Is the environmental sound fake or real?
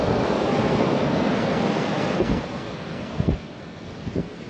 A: fake